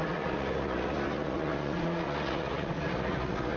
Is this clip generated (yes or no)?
yes